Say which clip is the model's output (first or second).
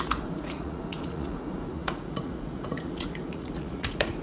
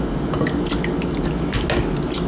first